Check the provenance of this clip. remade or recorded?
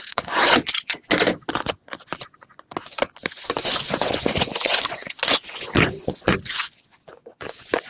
remade